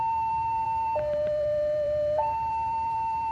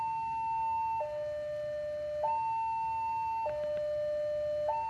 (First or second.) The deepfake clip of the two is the first